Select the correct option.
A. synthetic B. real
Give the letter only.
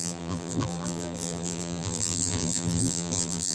A